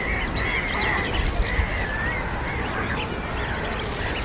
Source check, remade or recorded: recorded